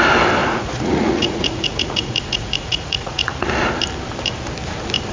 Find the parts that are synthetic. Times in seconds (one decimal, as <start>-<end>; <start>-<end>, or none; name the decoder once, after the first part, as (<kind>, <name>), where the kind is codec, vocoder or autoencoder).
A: 0.4-3.5 (vocoder, Vocos)